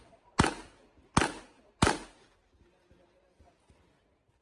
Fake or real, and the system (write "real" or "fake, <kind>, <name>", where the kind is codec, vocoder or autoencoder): real